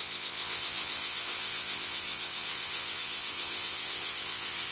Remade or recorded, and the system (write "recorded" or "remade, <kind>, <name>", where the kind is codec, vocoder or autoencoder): remade, vocoder, WaveNeXt